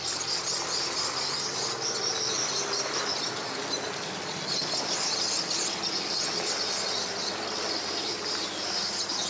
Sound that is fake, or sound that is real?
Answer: real